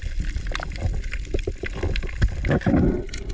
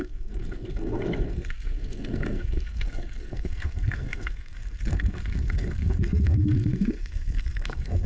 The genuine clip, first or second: first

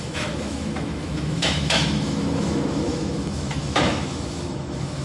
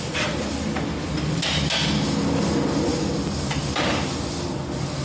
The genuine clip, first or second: second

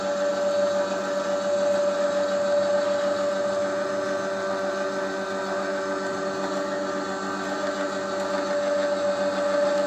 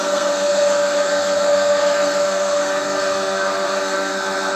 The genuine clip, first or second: first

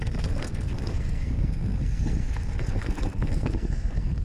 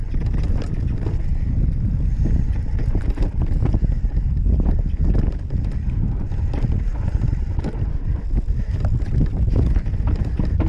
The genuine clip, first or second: second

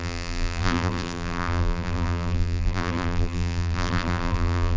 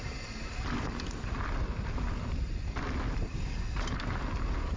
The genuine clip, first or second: second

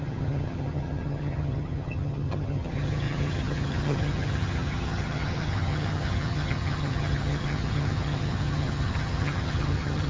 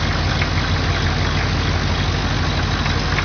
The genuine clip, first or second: second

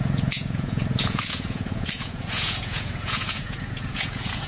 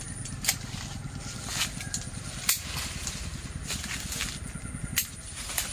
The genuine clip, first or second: second